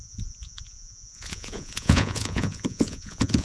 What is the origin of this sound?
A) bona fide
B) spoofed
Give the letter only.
B